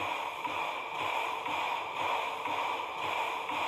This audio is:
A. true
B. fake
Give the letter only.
A